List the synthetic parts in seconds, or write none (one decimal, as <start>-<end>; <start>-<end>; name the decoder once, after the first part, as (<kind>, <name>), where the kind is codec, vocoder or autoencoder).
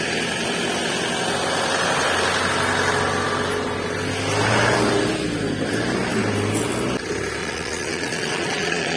7.4-9.0 (vocoder, Vocos)